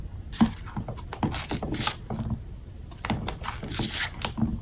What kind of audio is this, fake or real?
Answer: real